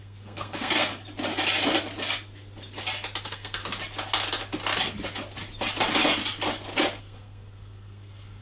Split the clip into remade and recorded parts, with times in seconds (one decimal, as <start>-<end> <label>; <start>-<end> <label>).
0.0-0.9 remade; 0.9-3.2 recorded; 3.2-3.6 remade; 3.6-7.0 recorded; 7.0-8.4 remade